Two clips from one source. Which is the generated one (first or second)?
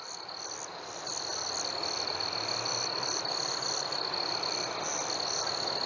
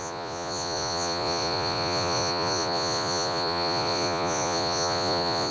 second